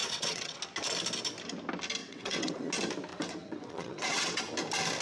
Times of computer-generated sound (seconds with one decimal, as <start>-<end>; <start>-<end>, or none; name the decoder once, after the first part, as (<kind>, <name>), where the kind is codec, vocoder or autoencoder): 0.0-0.6 (vocoder, WaveNeXt); 2.0-2.7; 3.1-4.4